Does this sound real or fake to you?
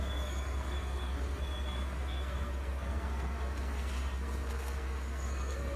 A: fake